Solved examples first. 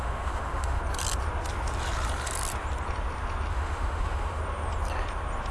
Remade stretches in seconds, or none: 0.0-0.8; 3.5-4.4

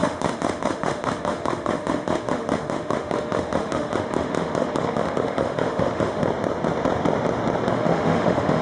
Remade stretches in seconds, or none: 0.0-6.2; 7.7-8.6

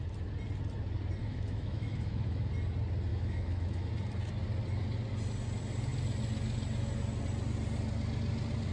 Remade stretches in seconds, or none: 1.2-2.5; 3.1-3.9

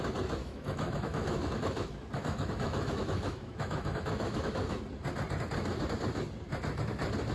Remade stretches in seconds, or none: 0.4-4.8

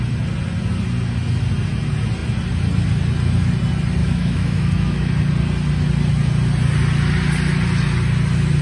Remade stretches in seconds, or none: 4.0-5.1

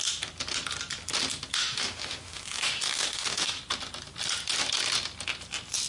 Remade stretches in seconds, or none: 1.6-3.6

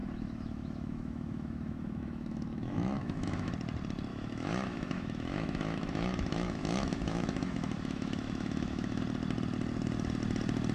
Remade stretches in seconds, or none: 0.0-3.5; 4.1-9.0

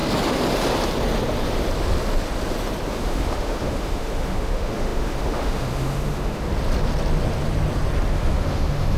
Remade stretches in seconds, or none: 2.9-6.5; 8.1-9.0